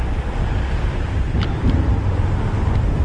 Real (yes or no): yes